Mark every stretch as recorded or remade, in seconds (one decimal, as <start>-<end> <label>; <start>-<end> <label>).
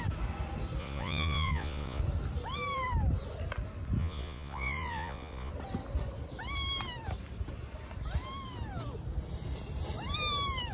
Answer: 0.0-0.8 recorded; 0.8-2.0 remade; 2.0-4.0 recorded; 4.0-5.5 remade; 5.5-10.7 recorded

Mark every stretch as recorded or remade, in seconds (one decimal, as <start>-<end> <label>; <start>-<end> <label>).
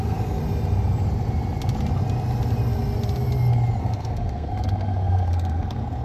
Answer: 0.0-0.4 remade; 0.4-3.8 recorded; 3.8-6.0 remade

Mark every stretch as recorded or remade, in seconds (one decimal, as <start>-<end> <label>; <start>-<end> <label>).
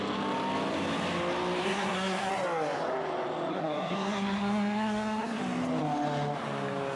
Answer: 0.0-1.6 recorded; 1.6-2.3 remade; 2.3-3.5 recorded; 3.5-5.4 remade; 5.4-7.0 recorded